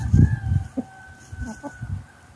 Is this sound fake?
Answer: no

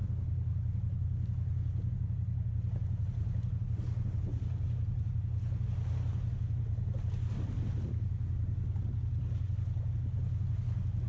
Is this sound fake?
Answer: no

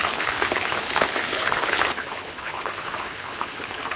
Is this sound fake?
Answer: yes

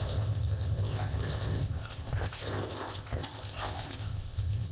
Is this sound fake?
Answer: yes